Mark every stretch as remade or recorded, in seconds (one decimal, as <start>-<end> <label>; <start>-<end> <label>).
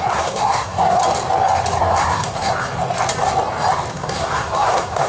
0.0-1.0 remade; 1.0-1.8 recorded; 1.8-2.5 remade; 2.5-3.9 recorded; 3.9-5.1 remade